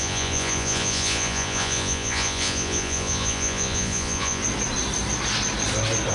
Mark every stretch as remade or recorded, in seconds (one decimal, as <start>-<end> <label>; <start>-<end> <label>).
0.0-4.4 remade; 4.4-6.1 recorded